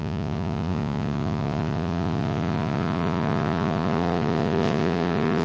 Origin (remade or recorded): remade